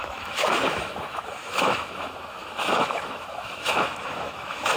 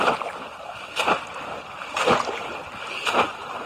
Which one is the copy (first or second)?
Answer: first